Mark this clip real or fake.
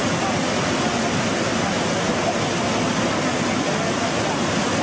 real